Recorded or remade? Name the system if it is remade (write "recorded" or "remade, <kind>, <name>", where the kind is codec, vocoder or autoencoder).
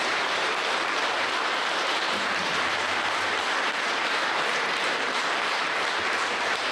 remade, vocoder, BigVGAN v2